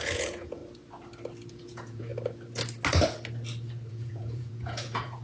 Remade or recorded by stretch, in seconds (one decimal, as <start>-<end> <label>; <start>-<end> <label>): 0.0-0.6 remade; 0.6-1.5 recorded; 1.5-2.1 remade; 2.1-3.9 recorded; 3.9-5.2 remade